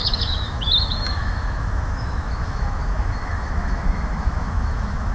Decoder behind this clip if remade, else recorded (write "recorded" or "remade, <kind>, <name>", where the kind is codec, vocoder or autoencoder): remade, autoencoder, DAC-VAE